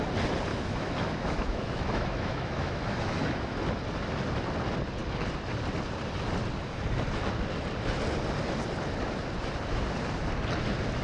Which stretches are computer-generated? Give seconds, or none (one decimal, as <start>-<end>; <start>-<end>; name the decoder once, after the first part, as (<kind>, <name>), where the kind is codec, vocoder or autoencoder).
0.5-3.6 (autoencoder, DAC-VAE)